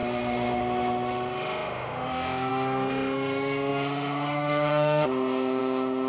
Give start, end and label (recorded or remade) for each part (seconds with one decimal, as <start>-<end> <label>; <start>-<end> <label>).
0.0-6.1 remade